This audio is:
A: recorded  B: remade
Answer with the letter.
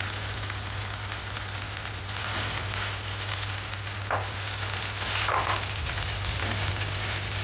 A